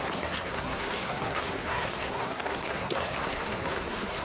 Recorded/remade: remade